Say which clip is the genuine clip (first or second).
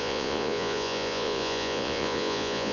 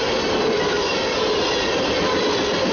second